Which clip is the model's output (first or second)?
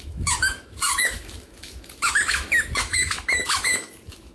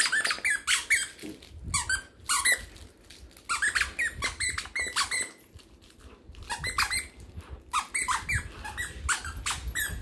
first